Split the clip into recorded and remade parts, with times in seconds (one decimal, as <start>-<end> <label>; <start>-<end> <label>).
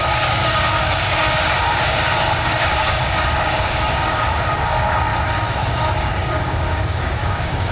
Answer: 0.0-5.1 remade; 5.1-6.0 recorded; 6.0-7.7 remade